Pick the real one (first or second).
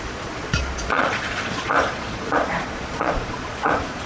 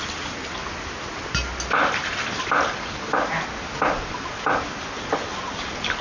second